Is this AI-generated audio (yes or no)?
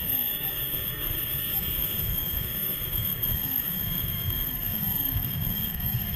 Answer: yes